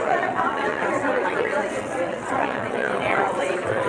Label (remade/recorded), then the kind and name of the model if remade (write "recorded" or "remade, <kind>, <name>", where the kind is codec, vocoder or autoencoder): remade, vocoder, WaveNeXt